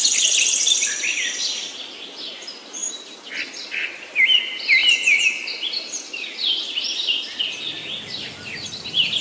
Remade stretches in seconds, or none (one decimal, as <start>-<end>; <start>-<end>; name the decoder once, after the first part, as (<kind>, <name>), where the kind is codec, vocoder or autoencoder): 2.8-4.1 (vocoder, BigVGAN v2); 4.8-7.4